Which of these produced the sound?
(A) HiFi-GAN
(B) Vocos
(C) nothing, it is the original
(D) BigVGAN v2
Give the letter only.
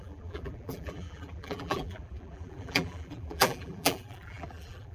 D